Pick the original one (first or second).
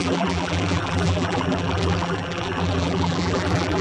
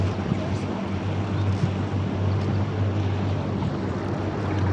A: second